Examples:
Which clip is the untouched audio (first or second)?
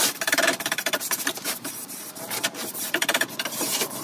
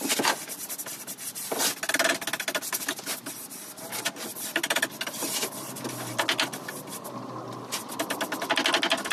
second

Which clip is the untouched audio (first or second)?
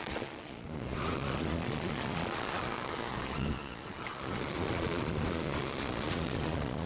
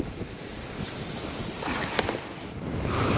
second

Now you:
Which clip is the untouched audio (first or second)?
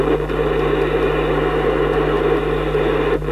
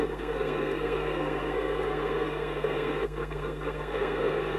first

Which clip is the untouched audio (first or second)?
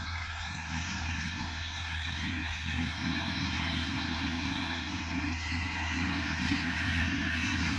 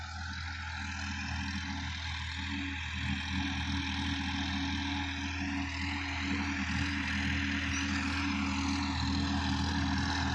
second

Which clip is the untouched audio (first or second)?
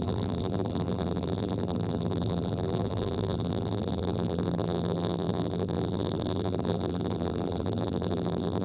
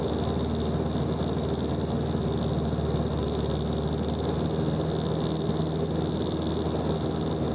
second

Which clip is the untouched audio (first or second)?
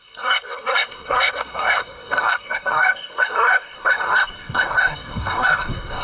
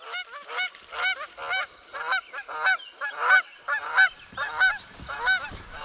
second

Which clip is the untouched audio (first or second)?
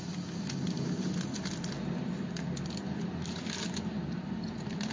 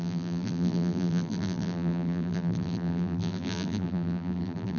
first